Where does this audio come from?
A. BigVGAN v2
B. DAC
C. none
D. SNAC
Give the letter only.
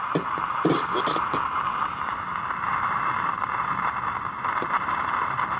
A